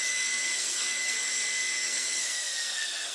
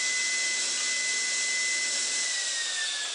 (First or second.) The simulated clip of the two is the first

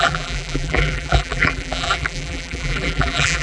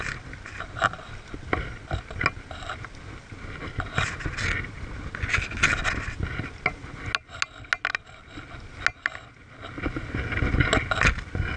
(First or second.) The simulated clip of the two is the first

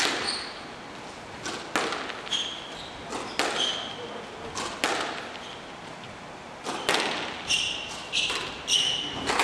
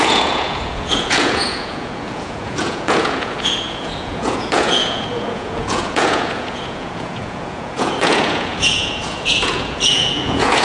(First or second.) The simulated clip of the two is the second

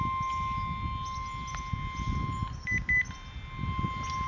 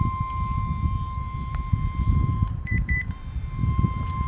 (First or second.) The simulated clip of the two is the second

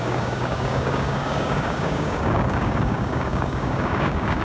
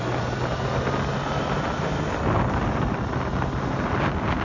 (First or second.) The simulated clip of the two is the first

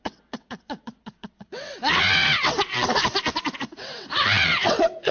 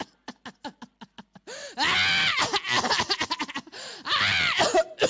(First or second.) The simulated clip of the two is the first